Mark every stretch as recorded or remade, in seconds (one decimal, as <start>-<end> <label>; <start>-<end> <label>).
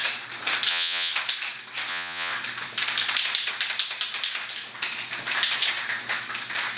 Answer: 0.0-0.7 recorded; 0.7-1.1 remade; 1.1-1.9 recorded; 1.9-2.3 remade; 2.3-6.8 recorded